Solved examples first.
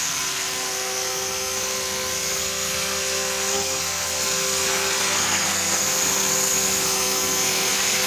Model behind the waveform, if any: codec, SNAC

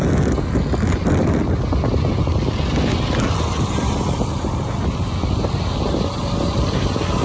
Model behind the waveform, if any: none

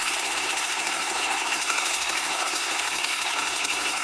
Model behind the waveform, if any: codec, SNAC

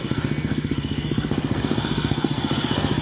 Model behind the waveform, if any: codec, SNAC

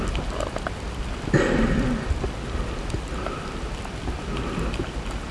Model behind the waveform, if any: none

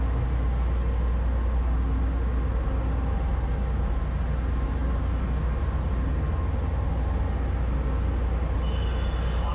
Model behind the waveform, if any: none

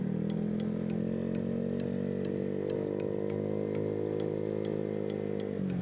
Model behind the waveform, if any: none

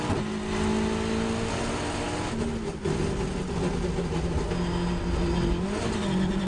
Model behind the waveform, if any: none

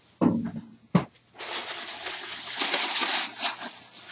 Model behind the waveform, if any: none